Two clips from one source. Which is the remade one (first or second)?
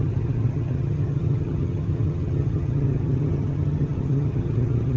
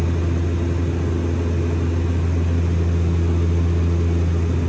first